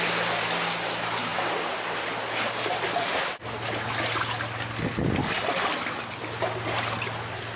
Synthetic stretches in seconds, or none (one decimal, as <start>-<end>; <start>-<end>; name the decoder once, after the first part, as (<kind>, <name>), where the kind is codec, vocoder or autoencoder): none